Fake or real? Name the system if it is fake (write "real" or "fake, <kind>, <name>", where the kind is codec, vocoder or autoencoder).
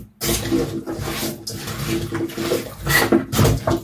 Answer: real